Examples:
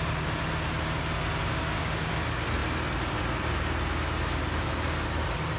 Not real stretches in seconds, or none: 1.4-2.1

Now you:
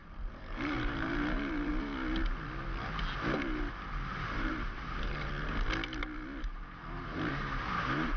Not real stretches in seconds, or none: 0.0-1.7; 4.1-5.3; 7.3-8.2

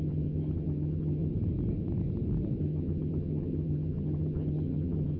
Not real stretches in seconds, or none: 0.0-1.3; 2.6-5.2

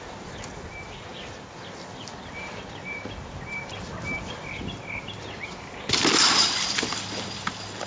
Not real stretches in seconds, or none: 1.1-5.8

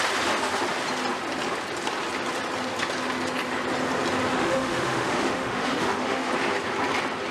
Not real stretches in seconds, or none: 4.3-6.3